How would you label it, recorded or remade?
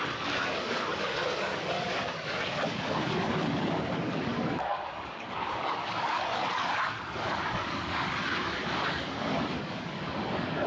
remade